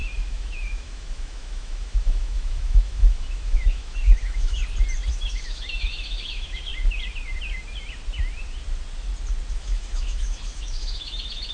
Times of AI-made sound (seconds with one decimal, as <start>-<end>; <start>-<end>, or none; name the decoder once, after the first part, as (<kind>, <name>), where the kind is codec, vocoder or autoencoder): 0.0-4.6 (autoencoder, DAC-VAE); 5.1-6.7; 9.5-11.5